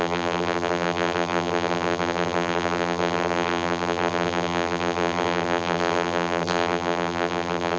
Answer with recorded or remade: remade